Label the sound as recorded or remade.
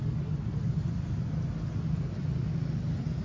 recorded